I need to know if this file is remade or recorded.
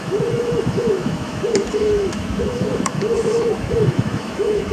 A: remade